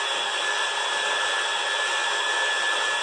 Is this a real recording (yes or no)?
yes